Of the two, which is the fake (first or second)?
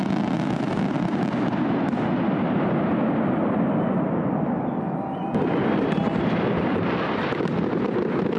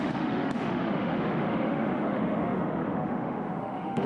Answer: second